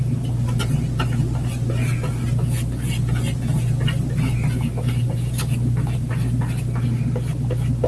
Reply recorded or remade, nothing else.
recorded